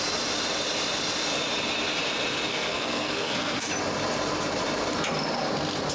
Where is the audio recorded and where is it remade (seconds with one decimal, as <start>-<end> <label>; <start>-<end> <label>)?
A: 0.0-2.5 recorded; 2.5-3.7 remade; 3.7-5.9 recorded